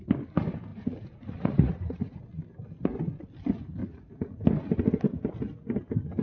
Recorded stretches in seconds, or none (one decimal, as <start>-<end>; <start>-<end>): 0.0-0.7; 2.2-3.8; 4.4-6.2